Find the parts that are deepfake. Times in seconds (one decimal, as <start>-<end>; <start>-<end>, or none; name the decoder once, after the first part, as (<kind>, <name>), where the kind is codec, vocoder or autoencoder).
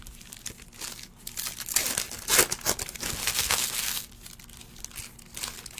3.2-4.1 (codec, SNAC)